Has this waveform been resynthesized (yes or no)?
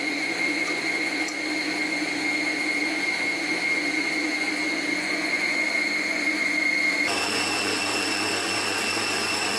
yes